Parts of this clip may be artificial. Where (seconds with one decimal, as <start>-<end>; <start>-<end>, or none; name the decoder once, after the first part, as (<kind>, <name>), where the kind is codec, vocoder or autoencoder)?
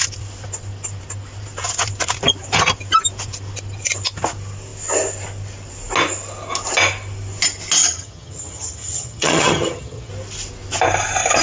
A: 7.8-10.1 (vocoder, HiFi-GAN)